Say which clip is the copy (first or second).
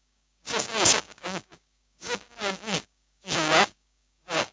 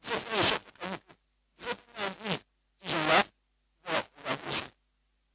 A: first